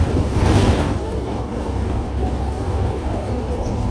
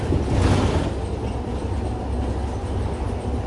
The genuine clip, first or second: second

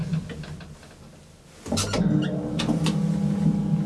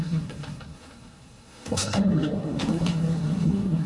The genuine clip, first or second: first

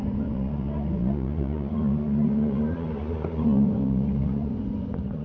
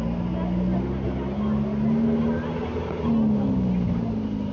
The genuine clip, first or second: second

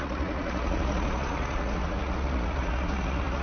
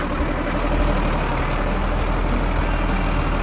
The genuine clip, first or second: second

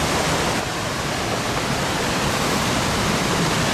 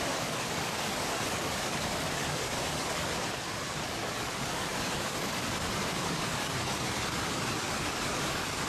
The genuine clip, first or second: first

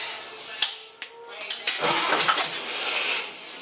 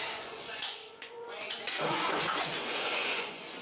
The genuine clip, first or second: first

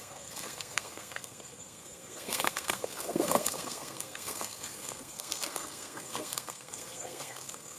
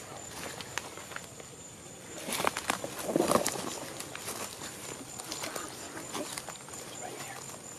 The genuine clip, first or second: second